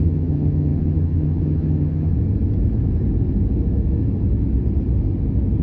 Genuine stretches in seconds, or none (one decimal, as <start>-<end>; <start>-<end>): 2.1-5.6